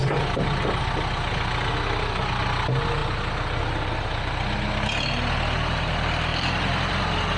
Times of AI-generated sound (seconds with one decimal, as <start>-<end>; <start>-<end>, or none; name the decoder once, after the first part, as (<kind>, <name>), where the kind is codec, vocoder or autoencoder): 6.3-6.9 (vocoder, BigVGAN v2)